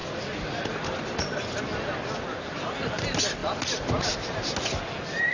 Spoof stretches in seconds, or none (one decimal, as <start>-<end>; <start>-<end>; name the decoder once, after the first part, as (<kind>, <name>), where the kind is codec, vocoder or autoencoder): none